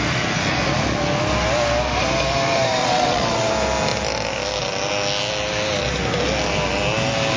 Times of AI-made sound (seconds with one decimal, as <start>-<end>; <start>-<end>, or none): 2.8-3.5